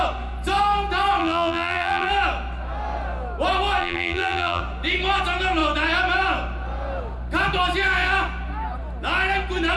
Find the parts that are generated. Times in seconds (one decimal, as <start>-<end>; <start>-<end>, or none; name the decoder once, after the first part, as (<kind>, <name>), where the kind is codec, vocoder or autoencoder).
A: 1.2-2.1 (vocoder, BigVGAN v2); 3.8-4.6